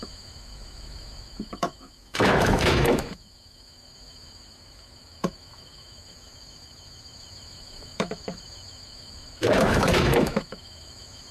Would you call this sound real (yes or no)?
no